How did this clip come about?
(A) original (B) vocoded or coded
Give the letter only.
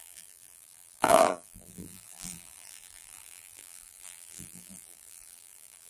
B